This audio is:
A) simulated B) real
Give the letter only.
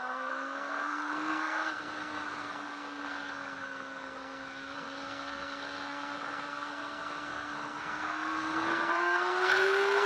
A